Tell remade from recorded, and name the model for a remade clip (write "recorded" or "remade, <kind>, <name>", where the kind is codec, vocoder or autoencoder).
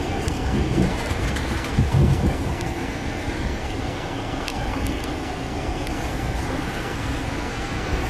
remade, codec, SNAC